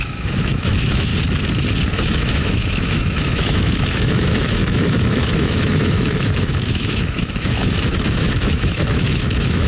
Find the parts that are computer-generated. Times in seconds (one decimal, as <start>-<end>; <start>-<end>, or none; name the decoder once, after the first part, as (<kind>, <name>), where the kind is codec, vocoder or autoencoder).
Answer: 0.0-1.1 (autoencoder, DAC-VAE); 1.9-9.7